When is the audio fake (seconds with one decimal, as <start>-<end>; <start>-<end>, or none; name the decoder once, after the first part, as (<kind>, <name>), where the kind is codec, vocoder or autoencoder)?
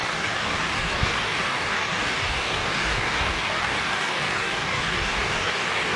0.0-6.0 (codec, DAC)